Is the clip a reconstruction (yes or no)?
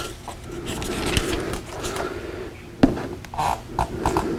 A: no